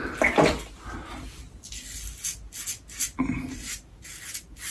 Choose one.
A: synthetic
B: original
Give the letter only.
B